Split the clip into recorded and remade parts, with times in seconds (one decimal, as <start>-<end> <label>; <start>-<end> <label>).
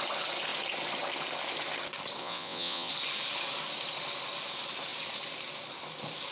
0.0-2.2 recorded; 2.2-2.9 remade; 2.9-6.3 recorded